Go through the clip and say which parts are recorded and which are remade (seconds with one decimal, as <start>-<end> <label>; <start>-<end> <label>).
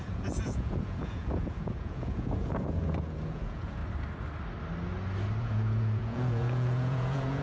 0.0-3.8 remade; 3.8-5.4 recorded; 5.4-7.4 remade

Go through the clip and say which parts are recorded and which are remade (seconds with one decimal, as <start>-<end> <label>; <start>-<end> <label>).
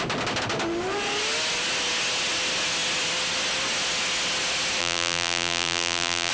0.0-4.8 recorded; 4.8-6.3 remade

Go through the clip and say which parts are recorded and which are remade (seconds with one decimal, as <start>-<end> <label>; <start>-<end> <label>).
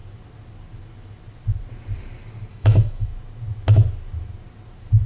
0.0-2.5 recorded; 2.5-3.1 remade; 3.1-5.1 recorded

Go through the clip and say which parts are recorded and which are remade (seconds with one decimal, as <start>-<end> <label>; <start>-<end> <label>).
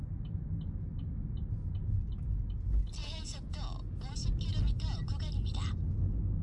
0.0-3.0 recorded; 3.0-3.6 remade; 3.6-6.4 recorded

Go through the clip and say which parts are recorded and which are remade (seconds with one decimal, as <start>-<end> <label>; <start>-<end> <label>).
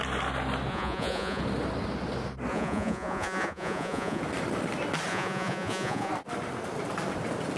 0.0-0.7 recorded; 0.7-1.4 remade; 1.4-2.5 recorded; 2.5-4.2 remade; 4.2-5.1 recorded; 5.1-6.1 remade; 6.1-7.6 recorded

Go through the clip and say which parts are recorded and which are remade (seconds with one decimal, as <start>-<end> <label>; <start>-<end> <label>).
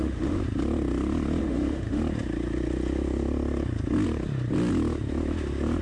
0.0-0.4 remade; 0.4-1.4 recorded; 1.4-2.0 remade; 2.0-5.8 recorded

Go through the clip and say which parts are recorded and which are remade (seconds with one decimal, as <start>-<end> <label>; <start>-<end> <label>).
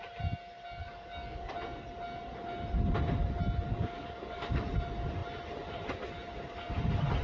0.0-0.8 recorded; 0.8-1.5 remade; 1.5-3.7 recorded; 3.7-4.6 remade; 4.6-7.2 recorded